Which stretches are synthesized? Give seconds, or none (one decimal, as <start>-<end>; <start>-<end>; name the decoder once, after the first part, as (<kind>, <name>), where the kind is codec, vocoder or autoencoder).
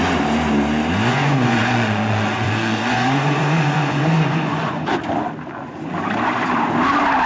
1.1-5.0 (vocoder, Vocos)